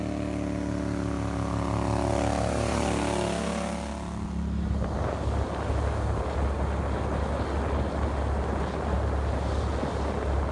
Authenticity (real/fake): real